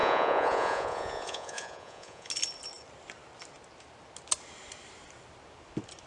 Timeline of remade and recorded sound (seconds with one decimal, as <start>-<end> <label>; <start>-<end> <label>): 0.0-2.3 remade; 2.3-6.1 recorded